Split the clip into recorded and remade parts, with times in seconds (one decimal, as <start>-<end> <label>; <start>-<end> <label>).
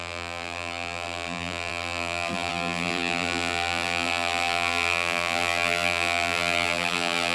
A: 0.0-7.3 remade